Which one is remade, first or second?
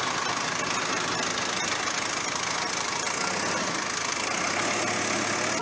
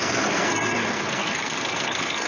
second